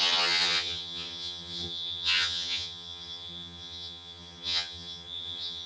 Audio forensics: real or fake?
fake